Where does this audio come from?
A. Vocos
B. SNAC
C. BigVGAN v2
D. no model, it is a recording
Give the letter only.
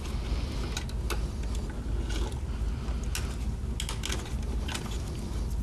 D